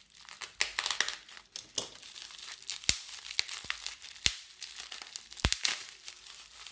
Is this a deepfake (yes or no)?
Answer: no